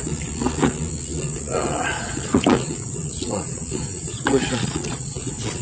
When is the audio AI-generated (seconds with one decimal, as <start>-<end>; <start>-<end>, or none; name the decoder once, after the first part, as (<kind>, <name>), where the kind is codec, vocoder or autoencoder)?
0.0-5.6 (vocoder, Vocos)